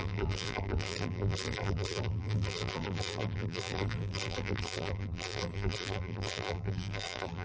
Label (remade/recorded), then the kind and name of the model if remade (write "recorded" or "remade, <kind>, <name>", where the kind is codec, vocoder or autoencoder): remade, vocoder, BigVGAN v2